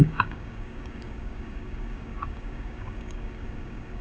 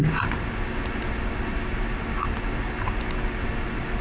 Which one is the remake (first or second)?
first